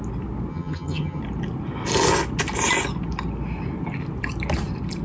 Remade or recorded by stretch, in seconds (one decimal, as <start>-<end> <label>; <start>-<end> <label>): 0.0-0.5 recorded; 0.5-1.2 remade; 1.2-5.0 recorded